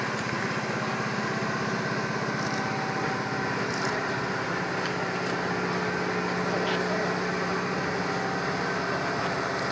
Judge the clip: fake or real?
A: real